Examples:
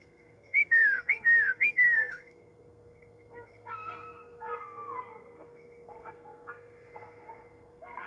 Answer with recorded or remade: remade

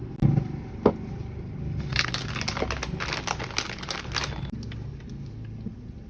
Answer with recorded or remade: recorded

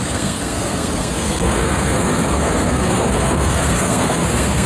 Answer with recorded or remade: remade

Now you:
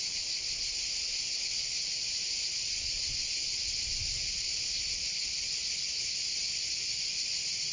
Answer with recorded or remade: recorded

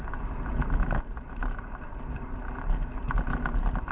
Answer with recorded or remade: recorded